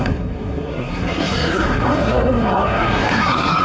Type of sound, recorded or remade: remade